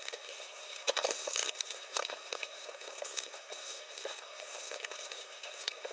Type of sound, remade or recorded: remade